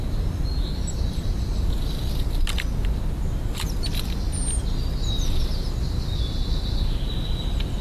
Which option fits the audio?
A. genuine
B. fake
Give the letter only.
A